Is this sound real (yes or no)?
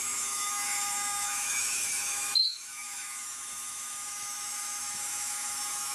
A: no